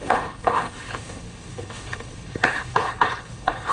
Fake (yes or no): yes